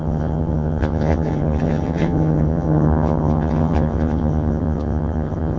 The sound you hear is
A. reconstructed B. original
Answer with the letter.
A